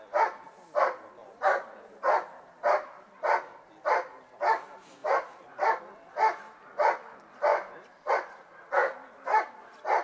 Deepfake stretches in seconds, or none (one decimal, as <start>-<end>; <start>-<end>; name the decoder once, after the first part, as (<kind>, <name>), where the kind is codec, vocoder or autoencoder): 1.2-3.0 (vocoder, BigVGAN v2); 5.0-5.8; 7.5-8.1